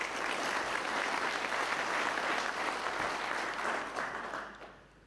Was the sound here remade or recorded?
recorded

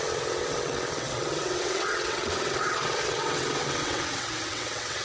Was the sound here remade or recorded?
remade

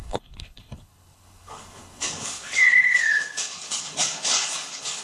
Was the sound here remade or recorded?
remade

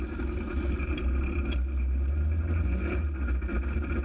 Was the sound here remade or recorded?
recorded